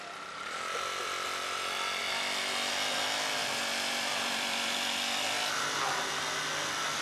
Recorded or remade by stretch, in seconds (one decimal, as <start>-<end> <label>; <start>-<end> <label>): 0.0-3.4 recorded; 3.4-5.6 remade; 5.6-7.0 recorded